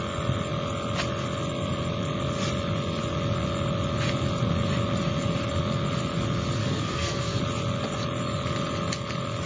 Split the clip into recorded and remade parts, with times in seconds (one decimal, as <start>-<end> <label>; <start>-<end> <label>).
0.0-6.6 recorded; 6.6-7.4 remade; 7.4-9.5 recorded